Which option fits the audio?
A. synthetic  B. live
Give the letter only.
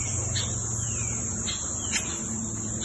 B